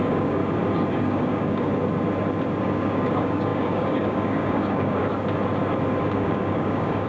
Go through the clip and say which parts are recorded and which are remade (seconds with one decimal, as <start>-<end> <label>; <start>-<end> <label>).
0.0-0.4 remade; 0.4-1.0 recorded; 1.0-1.7 remade; 1.7-2.6 recorded; 2.6-5.0 remade; 5.0-6.0 recorded; 6.0-7.1 remade